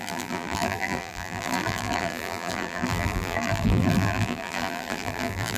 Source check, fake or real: fake